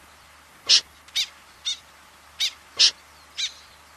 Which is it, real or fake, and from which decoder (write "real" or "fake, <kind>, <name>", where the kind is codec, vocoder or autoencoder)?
real